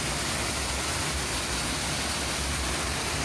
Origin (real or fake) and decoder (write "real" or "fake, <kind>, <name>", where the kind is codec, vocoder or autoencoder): real